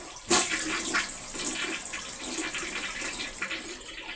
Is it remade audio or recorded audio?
recorded